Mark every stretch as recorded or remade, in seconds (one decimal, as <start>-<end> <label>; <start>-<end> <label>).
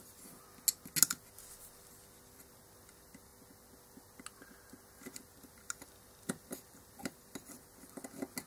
0.0-8.5 recorded